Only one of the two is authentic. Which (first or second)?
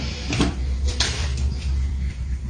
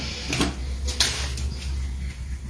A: second